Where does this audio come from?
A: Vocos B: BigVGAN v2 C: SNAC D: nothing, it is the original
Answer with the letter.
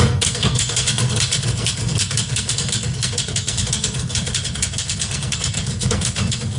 C